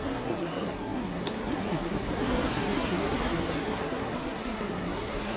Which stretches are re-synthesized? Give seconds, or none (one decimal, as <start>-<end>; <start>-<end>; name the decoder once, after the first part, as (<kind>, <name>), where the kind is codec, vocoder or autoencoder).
0.0-5.4 (codec, SNAC)